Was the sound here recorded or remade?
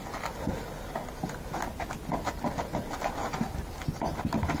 recorded